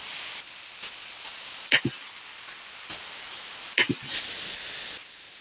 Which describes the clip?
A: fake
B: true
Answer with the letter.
B